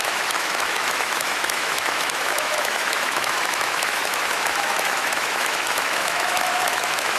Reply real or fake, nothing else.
fake